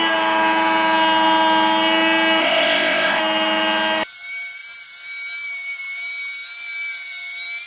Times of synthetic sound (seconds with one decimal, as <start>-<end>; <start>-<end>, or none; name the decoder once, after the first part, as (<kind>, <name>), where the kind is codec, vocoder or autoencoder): 2.4-3.2 (codec, ZipCodec)